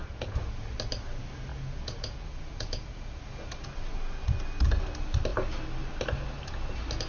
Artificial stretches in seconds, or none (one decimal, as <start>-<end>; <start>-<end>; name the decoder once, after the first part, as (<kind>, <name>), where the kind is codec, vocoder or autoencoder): 0.0-0.6 (vocoder, Vocos); 1.5-3.2